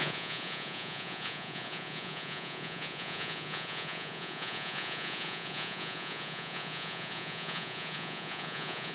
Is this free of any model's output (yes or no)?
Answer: no